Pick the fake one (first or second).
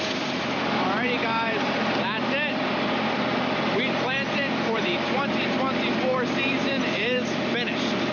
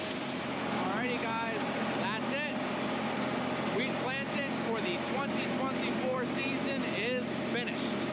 first